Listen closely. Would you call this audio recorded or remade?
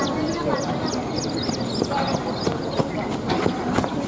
recorded